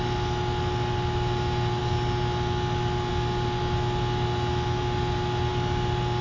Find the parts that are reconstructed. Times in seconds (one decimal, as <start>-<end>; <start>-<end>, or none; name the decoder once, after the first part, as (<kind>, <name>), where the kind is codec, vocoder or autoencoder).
none